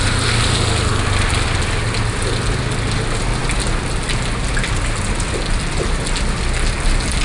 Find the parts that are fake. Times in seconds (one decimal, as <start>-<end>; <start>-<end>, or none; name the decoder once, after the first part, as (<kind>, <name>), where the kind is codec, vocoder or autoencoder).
none